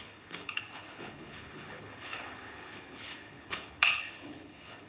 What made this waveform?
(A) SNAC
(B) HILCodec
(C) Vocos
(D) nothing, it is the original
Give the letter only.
B